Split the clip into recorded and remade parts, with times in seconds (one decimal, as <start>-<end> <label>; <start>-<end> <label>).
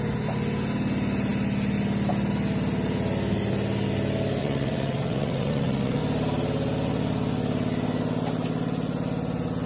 0.0-4.4 recorded; 4.4-6.0 remade; 6.0-9.7 recorded